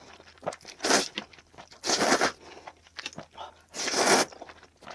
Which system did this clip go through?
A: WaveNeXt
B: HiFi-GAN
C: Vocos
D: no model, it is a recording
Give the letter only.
D